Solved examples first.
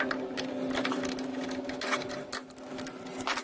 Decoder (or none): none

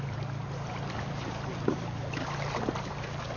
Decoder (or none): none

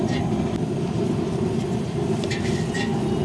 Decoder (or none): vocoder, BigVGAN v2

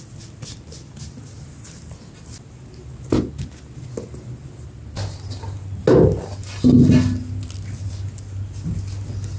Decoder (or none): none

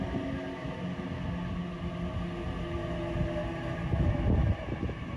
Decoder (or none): none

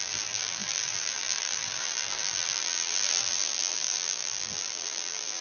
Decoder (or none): vocoder, BigVGAN v2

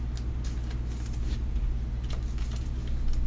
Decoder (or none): none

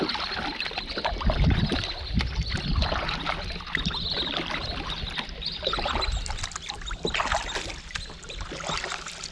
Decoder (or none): none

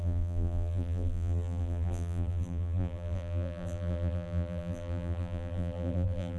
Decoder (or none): vocoder, BigVGAN v2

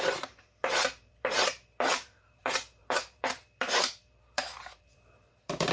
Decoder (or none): vocoder, BigVGAN v2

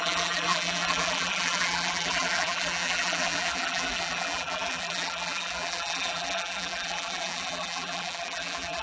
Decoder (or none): vocoder, BigVGAN v2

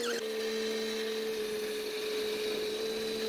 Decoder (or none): none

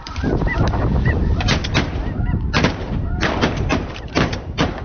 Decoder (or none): vocoder, BigVGAN v2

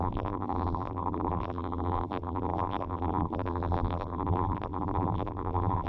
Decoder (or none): vocoder, BigVGAN v2